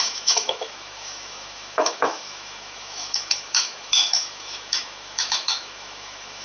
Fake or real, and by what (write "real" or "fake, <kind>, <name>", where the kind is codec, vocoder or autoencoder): fake, autoencoder, DAC-VAE